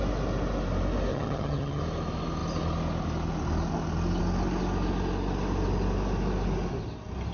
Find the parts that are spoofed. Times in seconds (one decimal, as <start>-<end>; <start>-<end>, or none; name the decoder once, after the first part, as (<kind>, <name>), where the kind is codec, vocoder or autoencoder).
1.1-1.8 (vocoder, HiFi-GAN)

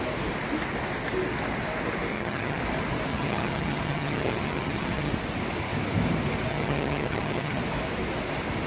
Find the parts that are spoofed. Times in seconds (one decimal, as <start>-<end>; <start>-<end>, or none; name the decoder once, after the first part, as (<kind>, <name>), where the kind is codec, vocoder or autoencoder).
2.1-2.6 (vocoder, HiFi-GAN); 3.1-5.1; 6.5-7.6

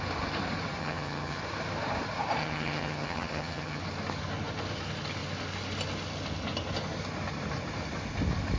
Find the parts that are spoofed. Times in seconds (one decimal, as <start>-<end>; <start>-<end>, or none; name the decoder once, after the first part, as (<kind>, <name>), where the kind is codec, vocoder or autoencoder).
0.8-1.4 (vocoder, HiFi-GAN); 2.4-3.8

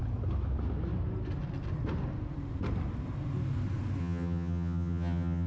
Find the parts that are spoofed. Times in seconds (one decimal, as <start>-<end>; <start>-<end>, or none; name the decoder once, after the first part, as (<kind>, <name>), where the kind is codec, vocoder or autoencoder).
4.0-5.5 (vocoder, HiFi-GAN)